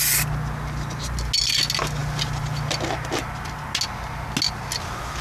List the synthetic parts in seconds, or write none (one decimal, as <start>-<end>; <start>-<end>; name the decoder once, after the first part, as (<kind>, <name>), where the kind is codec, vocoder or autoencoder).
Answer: none